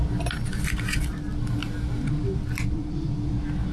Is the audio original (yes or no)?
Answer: yes